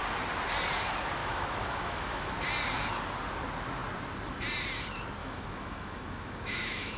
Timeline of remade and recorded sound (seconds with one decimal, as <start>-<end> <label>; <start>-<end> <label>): 0.0-1.2 recorded; 1.2-2.3 remade; 2.3-5.2 recorded; 5.2-7.0 remade